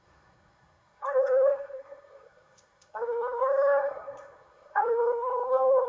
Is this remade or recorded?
remade